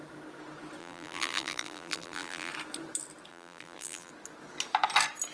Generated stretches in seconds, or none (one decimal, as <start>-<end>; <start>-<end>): 0.8-2.5; 3.3-4.1